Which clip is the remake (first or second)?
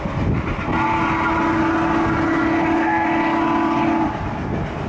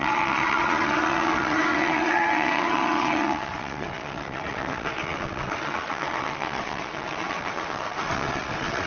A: second